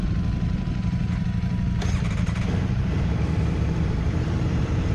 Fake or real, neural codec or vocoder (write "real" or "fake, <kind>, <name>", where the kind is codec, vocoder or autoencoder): fake, vocoder, BigVGAN v2